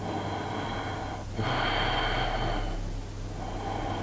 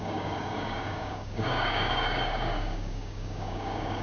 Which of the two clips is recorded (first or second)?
first